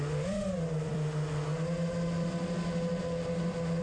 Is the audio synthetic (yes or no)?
no